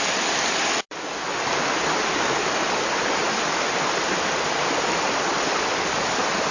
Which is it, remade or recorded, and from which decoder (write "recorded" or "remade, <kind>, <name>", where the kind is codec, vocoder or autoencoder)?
recorded